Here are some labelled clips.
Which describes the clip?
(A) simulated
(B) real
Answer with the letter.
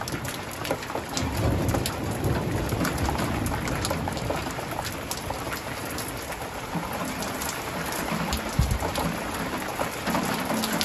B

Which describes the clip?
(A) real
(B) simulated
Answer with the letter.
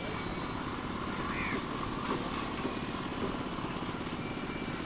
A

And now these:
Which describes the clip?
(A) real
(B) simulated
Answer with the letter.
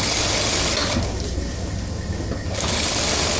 A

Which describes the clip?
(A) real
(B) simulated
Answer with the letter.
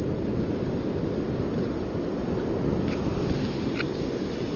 A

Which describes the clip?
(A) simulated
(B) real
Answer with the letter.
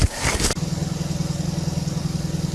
B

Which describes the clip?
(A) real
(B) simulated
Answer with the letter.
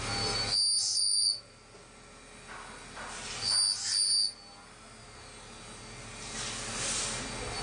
A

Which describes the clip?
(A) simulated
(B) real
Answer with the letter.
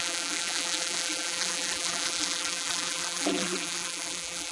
A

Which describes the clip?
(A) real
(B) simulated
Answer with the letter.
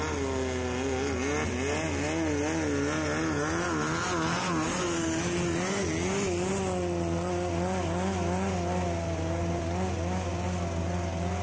A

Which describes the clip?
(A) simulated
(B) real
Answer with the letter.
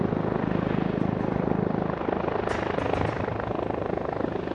B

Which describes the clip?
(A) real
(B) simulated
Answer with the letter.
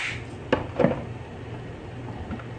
A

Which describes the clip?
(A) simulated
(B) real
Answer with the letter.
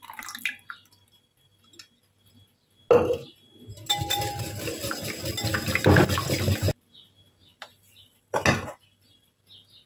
B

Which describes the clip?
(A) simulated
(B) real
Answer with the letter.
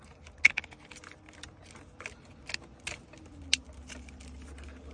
B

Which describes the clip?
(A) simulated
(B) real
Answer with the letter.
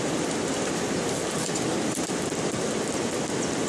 B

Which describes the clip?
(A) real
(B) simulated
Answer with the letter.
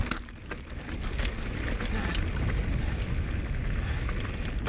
A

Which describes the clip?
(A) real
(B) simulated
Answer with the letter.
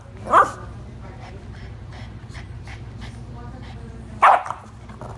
A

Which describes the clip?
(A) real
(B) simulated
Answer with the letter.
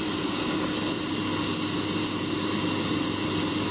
A